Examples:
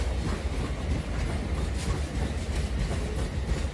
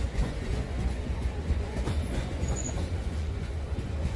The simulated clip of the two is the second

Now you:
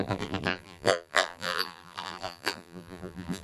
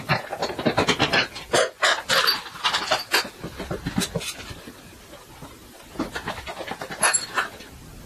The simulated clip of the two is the first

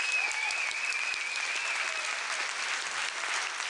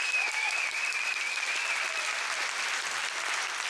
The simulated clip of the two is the second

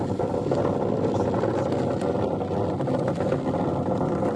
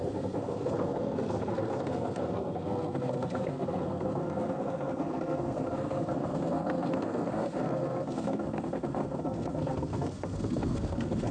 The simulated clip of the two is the second